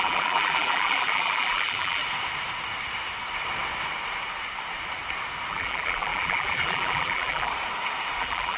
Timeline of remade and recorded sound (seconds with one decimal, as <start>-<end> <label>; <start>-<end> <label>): 0.0-2.0 remade; 2.0-5.5 recorded; 5.5-7.5 remade; 7.5-8.2 recorded; 8.2-8.6 remade